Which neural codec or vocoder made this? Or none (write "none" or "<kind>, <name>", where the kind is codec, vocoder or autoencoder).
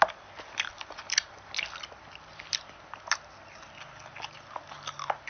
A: none